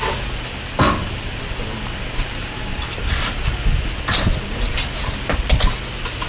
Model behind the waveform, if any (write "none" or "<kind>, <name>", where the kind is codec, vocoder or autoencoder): none